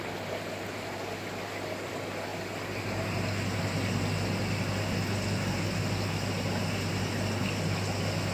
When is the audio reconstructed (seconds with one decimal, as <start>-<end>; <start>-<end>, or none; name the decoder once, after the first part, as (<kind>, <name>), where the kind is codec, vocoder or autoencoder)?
none